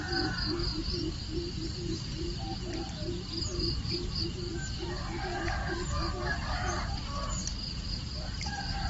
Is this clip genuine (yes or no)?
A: yes